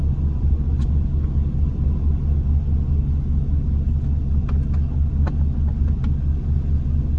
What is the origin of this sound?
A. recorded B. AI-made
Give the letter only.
A